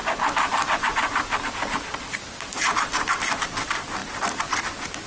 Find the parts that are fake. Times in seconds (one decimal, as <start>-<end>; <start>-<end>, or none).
0.0-3.1; 4.0-4.6